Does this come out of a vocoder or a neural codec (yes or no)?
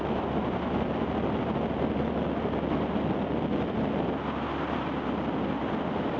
no